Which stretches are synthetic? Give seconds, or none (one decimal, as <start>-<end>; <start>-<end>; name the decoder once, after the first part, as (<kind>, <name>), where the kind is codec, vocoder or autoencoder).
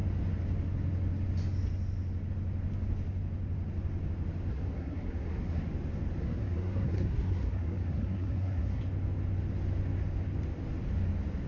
4.5-5.6 (codec, SNAC); 6.2-8.8